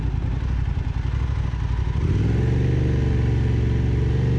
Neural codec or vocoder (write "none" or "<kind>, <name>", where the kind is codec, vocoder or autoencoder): none